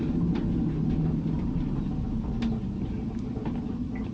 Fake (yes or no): no